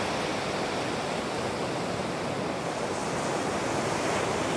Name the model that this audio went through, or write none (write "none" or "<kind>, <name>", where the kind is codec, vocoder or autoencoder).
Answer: none